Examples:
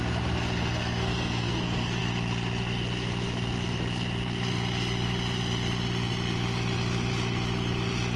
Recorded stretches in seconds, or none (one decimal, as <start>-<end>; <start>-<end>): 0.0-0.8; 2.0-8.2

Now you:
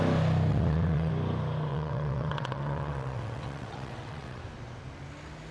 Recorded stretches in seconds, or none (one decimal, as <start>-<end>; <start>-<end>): 0.0-0.5; 1.1-1.7; 4.4-5.5

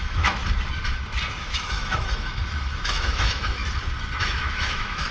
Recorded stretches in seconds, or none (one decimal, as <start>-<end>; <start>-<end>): 0.4-1.4; 3.6-4.2

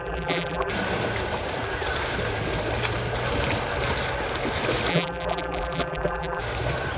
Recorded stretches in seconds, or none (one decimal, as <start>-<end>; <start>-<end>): 0.7-4.9; 6.4-7.0

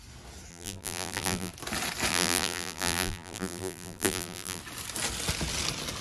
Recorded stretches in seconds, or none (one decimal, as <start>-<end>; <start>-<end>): 0.0-0.5; 1.5-2.1; 4.6-6.0